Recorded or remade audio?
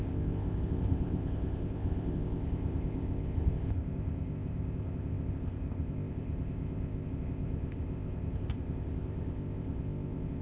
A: remade